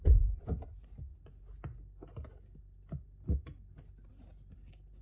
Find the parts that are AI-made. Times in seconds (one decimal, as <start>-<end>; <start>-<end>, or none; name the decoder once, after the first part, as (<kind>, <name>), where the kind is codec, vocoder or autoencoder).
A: none